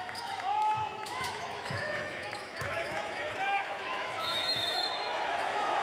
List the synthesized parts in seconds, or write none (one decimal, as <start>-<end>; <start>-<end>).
0.0-5.8